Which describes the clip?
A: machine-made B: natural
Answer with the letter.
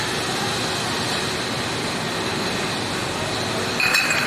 B